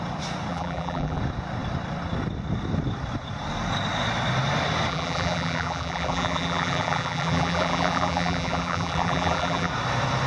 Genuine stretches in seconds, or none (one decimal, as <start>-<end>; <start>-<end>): 0.0-0.5; 1.2-4.9; 9.7-10.3